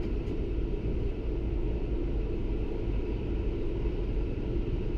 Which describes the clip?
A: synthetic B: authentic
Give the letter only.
B